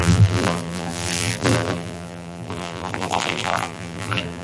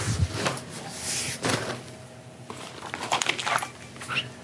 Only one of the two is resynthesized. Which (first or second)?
first